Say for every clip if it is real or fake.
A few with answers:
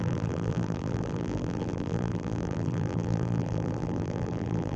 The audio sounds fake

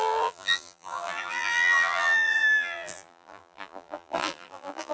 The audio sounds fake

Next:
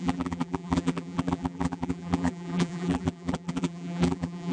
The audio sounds fake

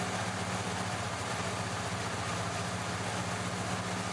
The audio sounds real